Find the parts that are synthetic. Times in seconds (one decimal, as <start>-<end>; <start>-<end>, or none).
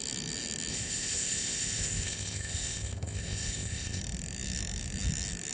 0.7-4.0